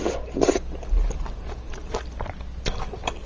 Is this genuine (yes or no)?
yes